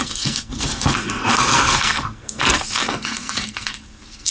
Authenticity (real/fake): fake